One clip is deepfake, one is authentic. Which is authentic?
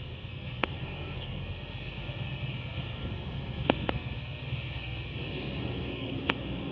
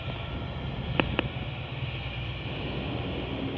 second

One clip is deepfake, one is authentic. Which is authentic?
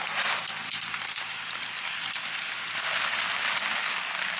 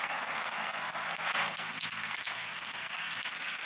first